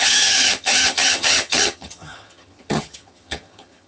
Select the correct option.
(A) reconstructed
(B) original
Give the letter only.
A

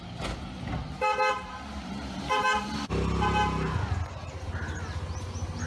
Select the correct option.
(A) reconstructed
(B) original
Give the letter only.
B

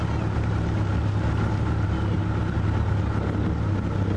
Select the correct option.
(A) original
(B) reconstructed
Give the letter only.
A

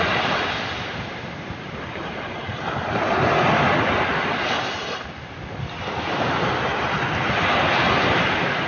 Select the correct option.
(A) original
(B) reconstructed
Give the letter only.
A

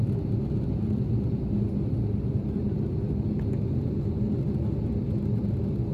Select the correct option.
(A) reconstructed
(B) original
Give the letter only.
B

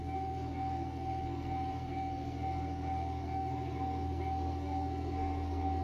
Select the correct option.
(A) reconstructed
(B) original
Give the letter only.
A